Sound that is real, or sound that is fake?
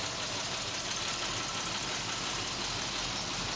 real